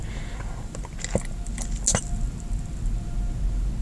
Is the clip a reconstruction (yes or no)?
no